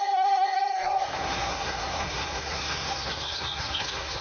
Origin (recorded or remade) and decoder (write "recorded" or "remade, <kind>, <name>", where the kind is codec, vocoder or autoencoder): remade, codec, SNAC